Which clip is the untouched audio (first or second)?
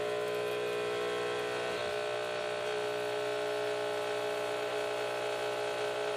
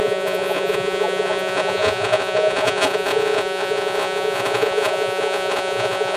first